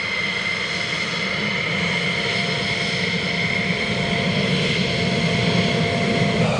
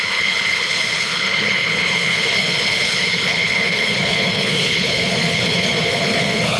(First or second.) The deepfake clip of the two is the second